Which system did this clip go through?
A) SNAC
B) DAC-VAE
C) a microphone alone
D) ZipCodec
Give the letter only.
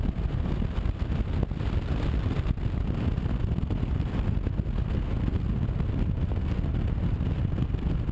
C